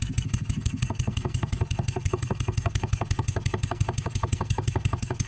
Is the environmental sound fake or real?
fake